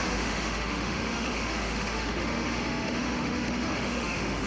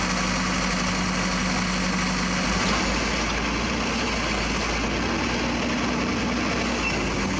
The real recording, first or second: second